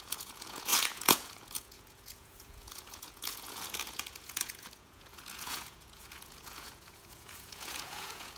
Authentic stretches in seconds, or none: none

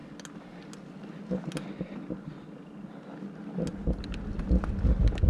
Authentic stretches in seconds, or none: 0.0-5.3

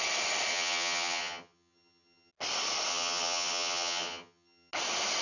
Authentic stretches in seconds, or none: 0.0-0.5; 2.3-2.9; 4.7-5.2

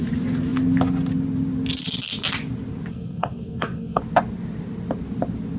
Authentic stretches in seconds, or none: 0.0-2.9; 4.0-5.6

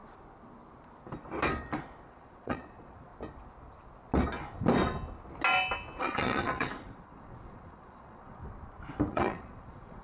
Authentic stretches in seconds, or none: 0.0-2.1; 3.1-6.0; 8.4-9.1

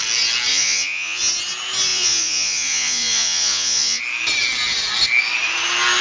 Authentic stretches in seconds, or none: 0.0-0.5; 1.2-1.9; 4.0-6.0

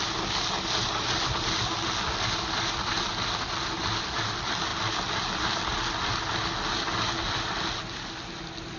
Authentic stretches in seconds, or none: 0.0-8.8